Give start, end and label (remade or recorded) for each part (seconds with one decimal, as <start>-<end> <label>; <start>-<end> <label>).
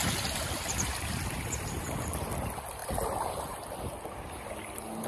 0.0-1.8 remade; 1.8-2.8 recorded; 2.8-3.8 remade; 3.8-5.1 recorded